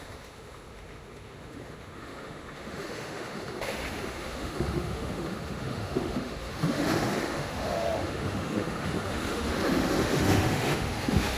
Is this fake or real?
fake